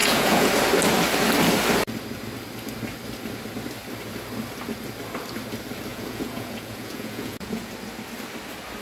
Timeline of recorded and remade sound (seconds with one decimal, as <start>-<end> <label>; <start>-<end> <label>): 0.0-0.5 remade; 0.5-5.9 recorded; 5.9-7.7 remade; 7.7-8.8 recorded